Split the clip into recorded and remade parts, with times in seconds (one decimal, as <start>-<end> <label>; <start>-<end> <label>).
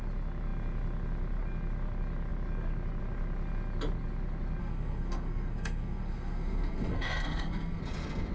0.0-4.6 recorded; 4.6-7.8 remade; 7.8-8.3 recorded